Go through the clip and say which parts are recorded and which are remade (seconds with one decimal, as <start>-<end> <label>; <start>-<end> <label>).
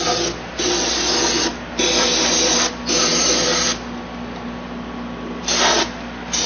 0.0-6.5 recorded